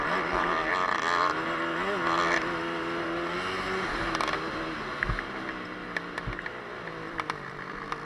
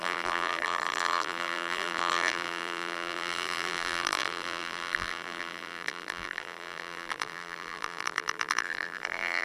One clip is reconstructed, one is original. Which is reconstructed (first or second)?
second